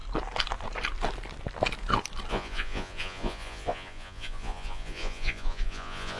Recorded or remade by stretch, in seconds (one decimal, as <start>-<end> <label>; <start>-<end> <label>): 0.0-2.3 recorded; 2.3-6.2 remade